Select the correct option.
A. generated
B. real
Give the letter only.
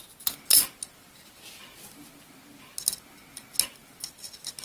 B